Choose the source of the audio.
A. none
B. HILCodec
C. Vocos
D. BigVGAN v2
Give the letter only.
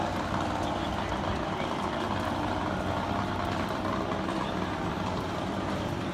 D